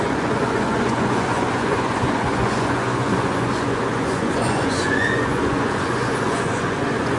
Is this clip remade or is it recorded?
remade